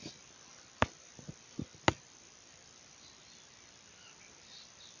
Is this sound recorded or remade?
recorded